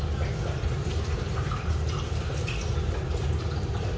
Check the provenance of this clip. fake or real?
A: real